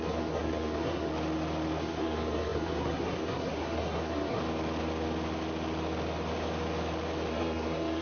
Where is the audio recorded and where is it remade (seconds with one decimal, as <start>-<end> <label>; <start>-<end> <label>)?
0.0-1.1 remade; 1.1-1.8 recorded; 1.8-4.4 remade; 4.4-7.3 recorded; 7.3-8.0 remade